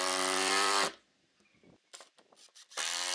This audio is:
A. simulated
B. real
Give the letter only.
A